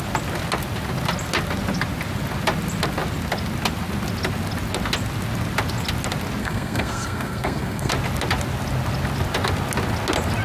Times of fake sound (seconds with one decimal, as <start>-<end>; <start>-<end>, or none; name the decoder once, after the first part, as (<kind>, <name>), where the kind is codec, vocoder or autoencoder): 6.4-7.9 (codec, SNAC)